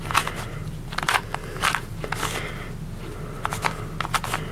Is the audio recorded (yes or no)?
yes